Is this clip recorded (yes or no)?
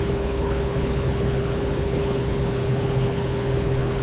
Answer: no